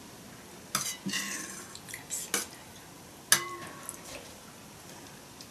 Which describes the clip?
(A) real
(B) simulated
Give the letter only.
A